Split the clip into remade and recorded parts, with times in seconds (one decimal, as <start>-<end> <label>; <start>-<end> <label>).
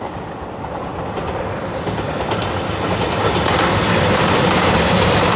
0.0-5.4 recorded